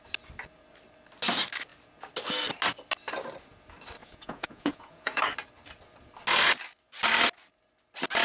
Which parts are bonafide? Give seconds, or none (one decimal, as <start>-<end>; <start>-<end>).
0.0-4.0; 5.2-8.2